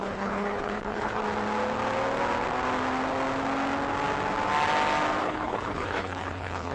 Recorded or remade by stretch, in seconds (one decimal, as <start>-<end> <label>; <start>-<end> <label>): 0.0-1.2 remade; 1.2-5.2 recorded; 5.2-6.7 remade